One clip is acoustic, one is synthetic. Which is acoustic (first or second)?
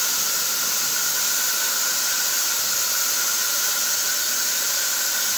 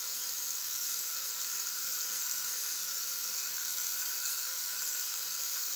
first